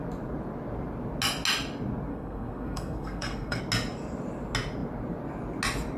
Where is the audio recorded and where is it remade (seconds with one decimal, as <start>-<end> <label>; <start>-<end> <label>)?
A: 0.0-2.1 recorded; 2.1-3.6 remade; 3.6-6.0 recorded